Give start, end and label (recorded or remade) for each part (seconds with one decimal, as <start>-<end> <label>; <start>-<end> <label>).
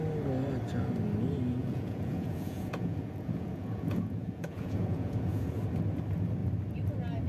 0.0-1.6 recorded; 1.6-5.6 remade; 5.6-7.3 recorded